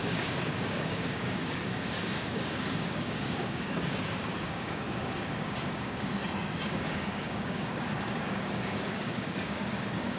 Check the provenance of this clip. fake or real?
fake